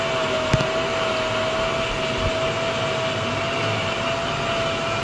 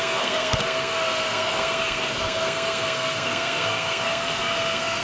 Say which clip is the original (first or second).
first